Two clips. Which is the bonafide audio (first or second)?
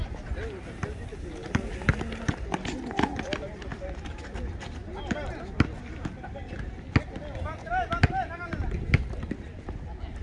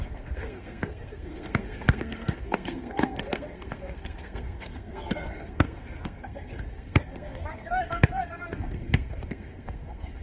first